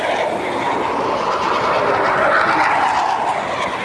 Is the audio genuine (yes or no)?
yes